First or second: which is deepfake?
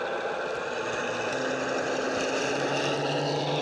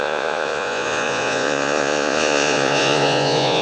second